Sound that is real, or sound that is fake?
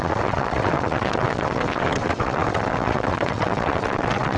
fake